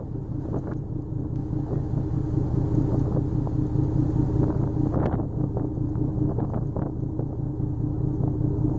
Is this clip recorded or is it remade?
recorded